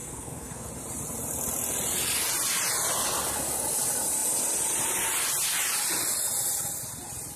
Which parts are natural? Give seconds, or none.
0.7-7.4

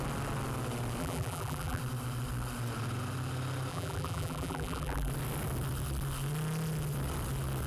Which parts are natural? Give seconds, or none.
0.0-1.0; 1.8-3.7; 5.1-7.7

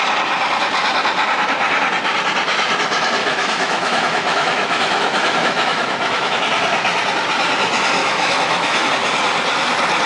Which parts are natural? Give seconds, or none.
0.0-3.2; 6.4-8.0; 8.9-10.1

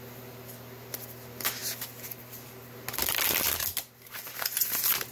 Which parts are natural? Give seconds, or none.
0.0-5.1

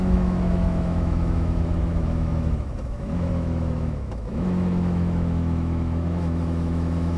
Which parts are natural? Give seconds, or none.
none

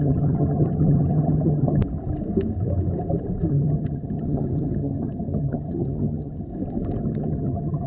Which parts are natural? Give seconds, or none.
1.8-3.5; 6.5-7.0